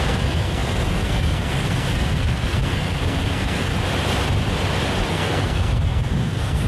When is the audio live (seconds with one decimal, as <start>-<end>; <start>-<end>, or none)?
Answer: 3.7-5.1